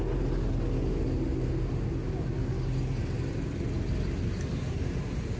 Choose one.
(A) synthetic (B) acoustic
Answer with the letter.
B